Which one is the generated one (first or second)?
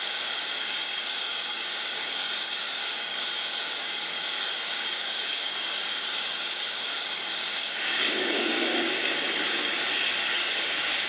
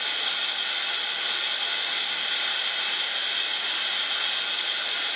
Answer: first